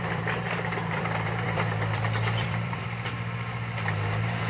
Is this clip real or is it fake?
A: fake